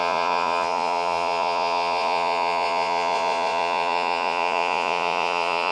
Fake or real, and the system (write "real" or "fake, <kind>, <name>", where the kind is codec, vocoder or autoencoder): fake, vocoder, Vocos